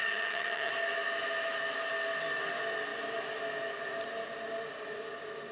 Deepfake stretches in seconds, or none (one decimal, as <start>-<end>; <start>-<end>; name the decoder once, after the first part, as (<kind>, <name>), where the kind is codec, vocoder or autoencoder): 0.0-0.7 (vocoder, HiFi-GAN)